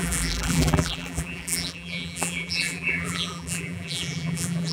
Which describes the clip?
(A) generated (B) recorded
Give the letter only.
A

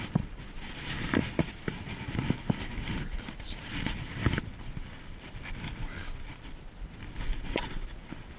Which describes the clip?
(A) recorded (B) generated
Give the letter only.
A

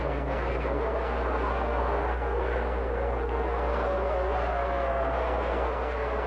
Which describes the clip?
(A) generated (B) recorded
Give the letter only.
A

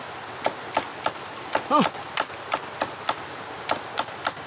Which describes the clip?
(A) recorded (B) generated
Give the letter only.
A